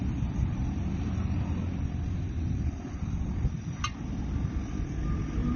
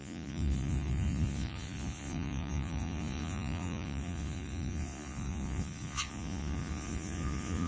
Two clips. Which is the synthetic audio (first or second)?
second